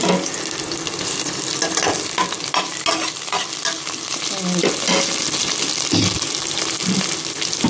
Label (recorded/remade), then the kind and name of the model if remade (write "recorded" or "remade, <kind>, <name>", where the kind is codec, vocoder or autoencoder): recorded